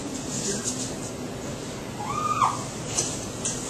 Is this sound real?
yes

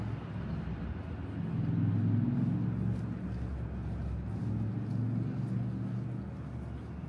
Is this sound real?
yes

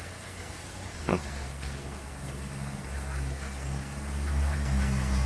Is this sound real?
no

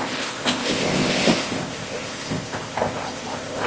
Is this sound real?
no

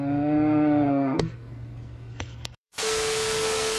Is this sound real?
no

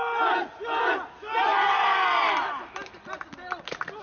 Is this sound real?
yes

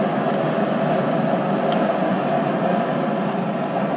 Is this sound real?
yes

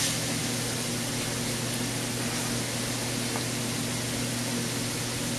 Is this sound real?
yes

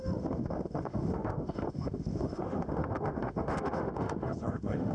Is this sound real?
no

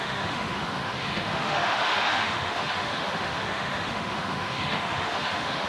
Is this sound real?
no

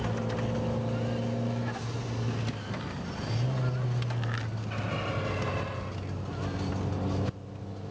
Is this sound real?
yes